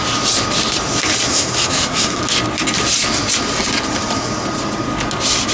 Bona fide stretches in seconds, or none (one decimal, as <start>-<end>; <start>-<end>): 0.0-1.3; 2.2-5.5